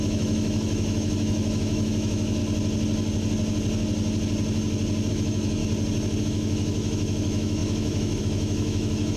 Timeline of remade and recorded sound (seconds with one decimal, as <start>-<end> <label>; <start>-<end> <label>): 0.0-2.4 remade; 2.4-5.1 recorded; 5.1-5.6 remade; 5.6-6.2 recorded; 6.2-9.2 remade